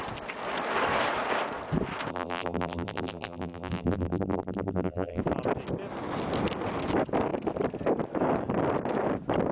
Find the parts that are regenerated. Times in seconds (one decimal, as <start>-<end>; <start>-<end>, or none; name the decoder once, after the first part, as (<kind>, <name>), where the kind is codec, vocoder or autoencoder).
2.1-5.2 (vocoder, BigVGAN v2)